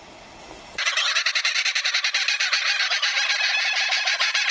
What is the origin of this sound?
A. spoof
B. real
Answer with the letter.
B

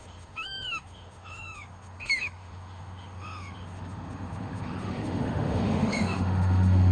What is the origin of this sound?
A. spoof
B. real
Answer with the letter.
A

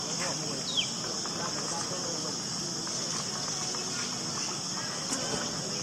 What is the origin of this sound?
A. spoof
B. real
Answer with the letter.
B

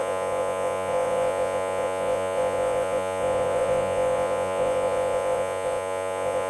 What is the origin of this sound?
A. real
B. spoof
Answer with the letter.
B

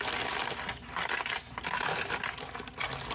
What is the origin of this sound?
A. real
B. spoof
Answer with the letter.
A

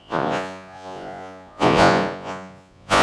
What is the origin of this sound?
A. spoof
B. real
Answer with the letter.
A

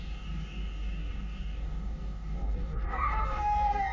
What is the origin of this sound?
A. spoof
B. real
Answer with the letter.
A